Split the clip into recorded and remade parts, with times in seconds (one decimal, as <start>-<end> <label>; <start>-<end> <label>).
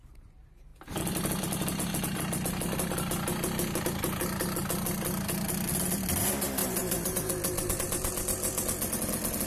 0.0-6.6 recorded; 6.6-7.3 remade; 7.3-9.5 recorded